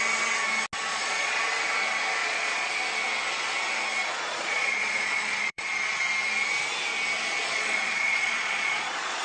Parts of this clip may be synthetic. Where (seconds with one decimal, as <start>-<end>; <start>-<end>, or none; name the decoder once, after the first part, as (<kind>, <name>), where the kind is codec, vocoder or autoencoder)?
0.9-1.4 (vocoder, Vocos); 2.2-2.7; 4.0-5.7; 7.4-9.2